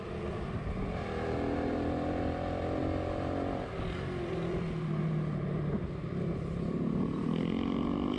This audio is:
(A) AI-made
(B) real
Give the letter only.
B